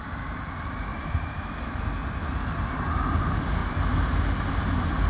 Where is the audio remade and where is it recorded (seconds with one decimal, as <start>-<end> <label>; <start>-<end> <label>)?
0.0-0.9 recorded; 0.9-1.8 remade; 1.8-5.1 recorded